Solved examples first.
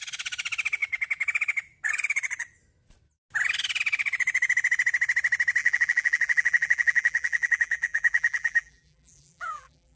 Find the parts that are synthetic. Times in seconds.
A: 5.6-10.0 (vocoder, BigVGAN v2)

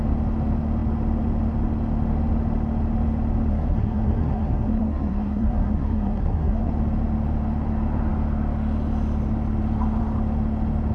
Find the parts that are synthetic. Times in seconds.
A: 3.5-6.7 (codec, SNAC)

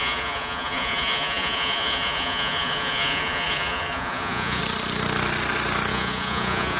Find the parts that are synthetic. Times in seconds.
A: 0.0-4.6 (vocoder, Vocos); 5.9-6.8

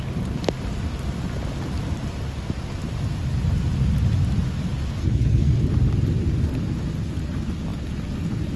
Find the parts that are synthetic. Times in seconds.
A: 5.0-5.6 (codec, SNAC)

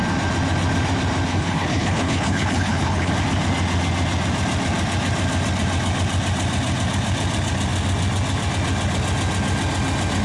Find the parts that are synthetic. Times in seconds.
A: 1.3-3.1 (codec, HILCodec)

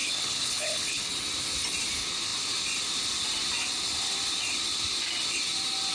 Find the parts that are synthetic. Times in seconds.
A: 0.0-1.0 (codec, HILCodec)

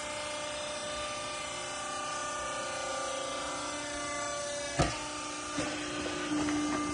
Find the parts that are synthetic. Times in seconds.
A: none